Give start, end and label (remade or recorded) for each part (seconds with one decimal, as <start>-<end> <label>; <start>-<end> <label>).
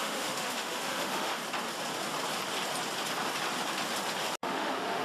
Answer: 0.0-1.4 remade; 1.4-4.4 recorded; 4.4-5.0 remade